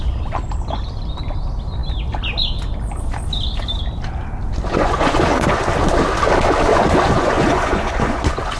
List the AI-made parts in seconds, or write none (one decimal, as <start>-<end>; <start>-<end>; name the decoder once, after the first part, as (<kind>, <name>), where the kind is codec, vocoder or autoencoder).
4.7-5.7 (vocoder, Vocos); 6.7-8.6